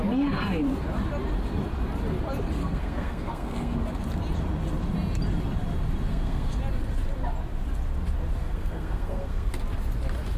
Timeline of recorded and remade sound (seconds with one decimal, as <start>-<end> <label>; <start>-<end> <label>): 0.0-2.6 recorded; 2.6-3.8 remade; 3.8-6.1 recorded; 6.1-6.6 remade; 6.6-8.4 recorded; 8.4-9.5 remade; 9.5-10.4 recorded